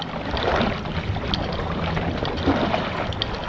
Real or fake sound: real